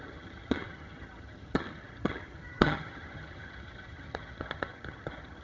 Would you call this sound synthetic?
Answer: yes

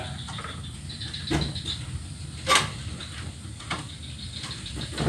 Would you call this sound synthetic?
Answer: no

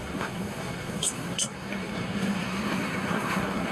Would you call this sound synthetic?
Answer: yes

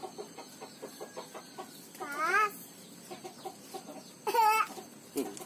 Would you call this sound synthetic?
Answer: no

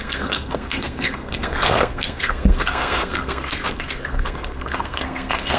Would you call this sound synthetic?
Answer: yes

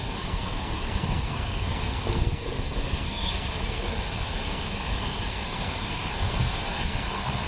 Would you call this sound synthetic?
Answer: yes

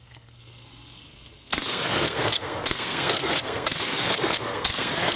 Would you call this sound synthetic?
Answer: yes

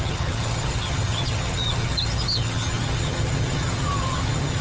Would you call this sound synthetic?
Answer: yes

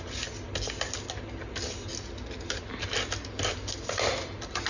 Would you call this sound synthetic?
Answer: no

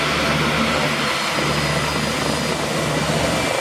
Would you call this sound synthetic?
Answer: no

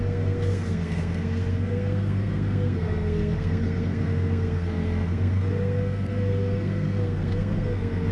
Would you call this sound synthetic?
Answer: yes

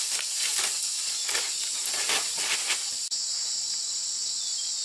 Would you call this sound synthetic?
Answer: no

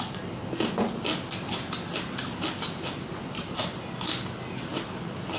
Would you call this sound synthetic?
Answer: no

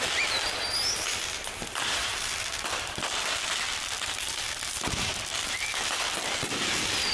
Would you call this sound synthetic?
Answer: no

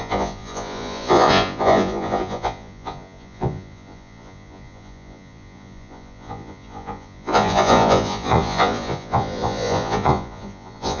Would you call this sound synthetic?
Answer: yes